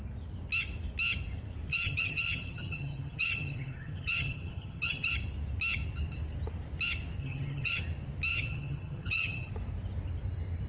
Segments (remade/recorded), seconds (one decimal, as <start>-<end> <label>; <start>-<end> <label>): 0.0-1.7 recorded; 1.7-5.1 remade; 5.1-7.2 recorded; 7.2-7.8 remade; 7.8-8.3 recorded; 8.3-9.5 remade; 9.5-10.7 recorded